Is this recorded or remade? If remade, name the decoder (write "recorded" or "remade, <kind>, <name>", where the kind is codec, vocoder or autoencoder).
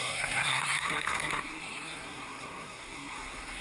remade, codec, SNAC